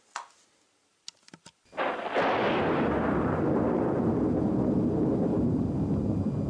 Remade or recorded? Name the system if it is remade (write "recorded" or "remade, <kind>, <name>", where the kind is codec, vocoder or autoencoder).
recorded